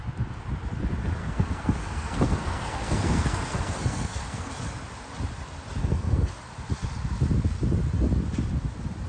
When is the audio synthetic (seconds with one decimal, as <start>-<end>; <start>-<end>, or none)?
1.2-4.5; 5.8-6.3